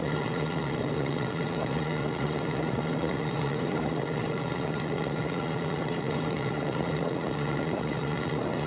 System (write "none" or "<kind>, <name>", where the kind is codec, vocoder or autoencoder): vocoder, Vocos